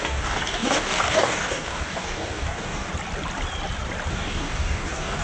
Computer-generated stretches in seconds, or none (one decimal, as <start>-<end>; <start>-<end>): 0.0-2.9; 4.1-5.2